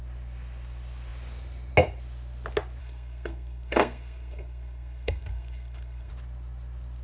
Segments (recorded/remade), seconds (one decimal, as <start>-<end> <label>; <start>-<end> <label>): 0.0-2.8 recorded; 2.8-6.1 remade; 6.1-7.0 recorded